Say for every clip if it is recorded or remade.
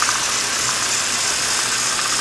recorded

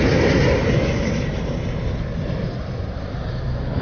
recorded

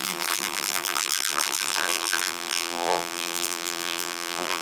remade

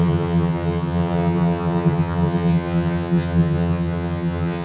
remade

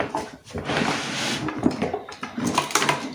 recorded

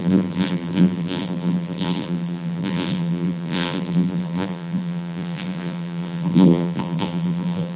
remade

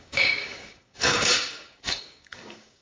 remade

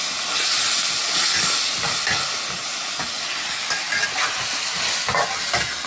recorded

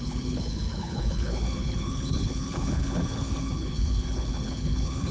remade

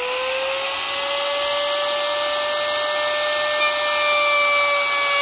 recorded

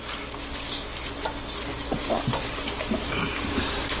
recorded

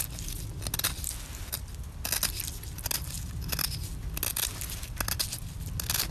recorded